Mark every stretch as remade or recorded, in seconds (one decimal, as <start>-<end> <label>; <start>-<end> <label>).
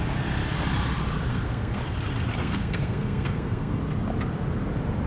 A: 0.0-1.3 recorded; 1.3-1.8 remade; 1.8-2.4 recorded; 2.4-3.8 remade; 3.8-5.1 recorded